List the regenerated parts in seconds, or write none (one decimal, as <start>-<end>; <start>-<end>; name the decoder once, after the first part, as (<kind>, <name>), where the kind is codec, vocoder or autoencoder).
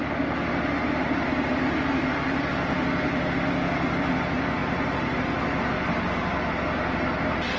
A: none